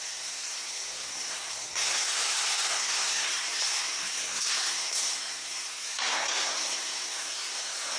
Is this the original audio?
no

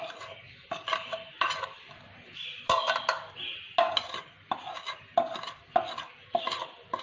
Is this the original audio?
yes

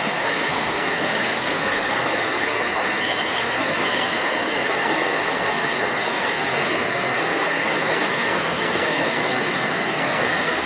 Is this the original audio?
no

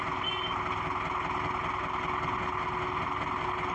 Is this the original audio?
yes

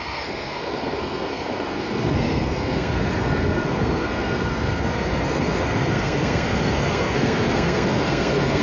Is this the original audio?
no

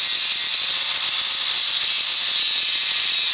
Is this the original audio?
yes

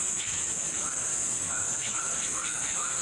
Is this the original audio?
no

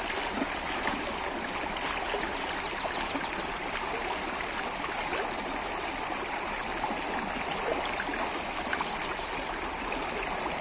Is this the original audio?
yes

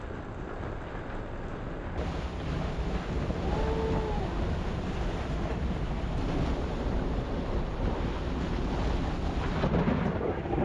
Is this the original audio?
yes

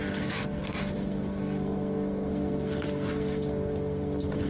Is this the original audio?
no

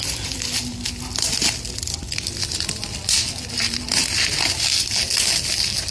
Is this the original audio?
yes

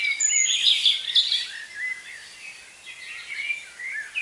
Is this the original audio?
yes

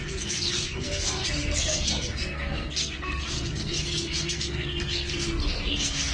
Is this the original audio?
no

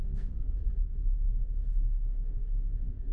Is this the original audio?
no